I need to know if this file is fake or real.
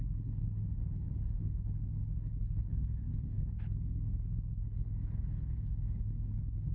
fake